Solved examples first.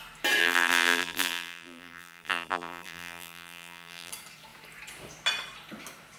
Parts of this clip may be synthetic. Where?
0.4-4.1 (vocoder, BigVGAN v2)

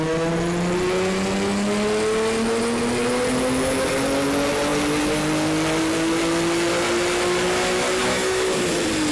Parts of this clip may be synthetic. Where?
8.0-8.7 (autoencoder, DAC-VAE)

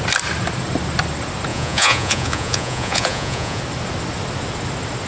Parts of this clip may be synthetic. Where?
1.5-3.6 (vocoder, Vocos)

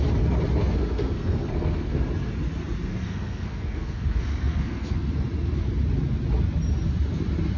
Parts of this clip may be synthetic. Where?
0.6-2.0 (codec, SNAC); 2.9-5.1

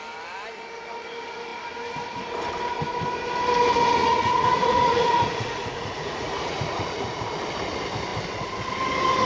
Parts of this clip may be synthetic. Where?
4.0-7.2 (vocoder, Vocos)

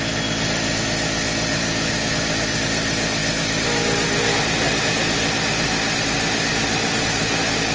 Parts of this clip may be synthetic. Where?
1.6-2.6 (autoencoder, DAC-VAE)